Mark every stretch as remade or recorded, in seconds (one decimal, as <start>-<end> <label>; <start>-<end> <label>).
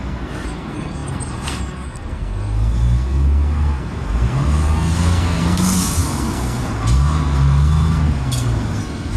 0.0-9.2 remade